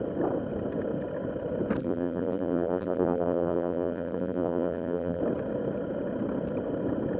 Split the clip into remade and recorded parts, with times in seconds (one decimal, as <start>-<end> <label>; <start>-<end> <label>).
0.0-1.8 recorded; 1.8-5.2 remade; 5.2-7.2 recorded